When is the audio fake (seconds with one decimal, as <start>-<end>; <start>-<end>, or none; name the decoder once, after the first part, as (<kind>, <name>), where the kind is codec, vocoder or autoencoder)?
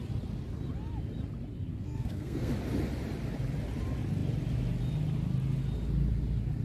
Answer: 1.7-2.5 (codec, SNAC)